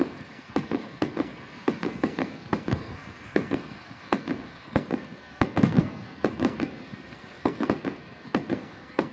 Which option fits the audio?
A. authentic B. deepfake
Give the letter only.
B